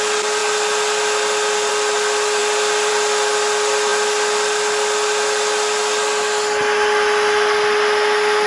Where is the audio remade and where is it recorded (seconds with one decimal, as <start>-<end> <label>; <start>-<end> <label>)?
0.0-8.5 recorded